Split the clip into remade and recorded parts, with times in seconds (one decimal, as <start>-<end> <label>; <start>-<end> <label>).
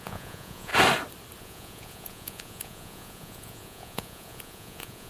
0.0-0.7 remade; 0.7-1.4 recorded; 1.4-5.1 remade